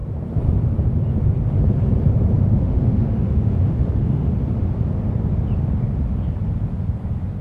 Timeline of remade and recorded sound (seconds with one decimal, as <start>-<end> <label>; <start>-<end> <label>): 0.0-2.6 recorded; 2.6-4.3 remade; 4.3-7.4 recorded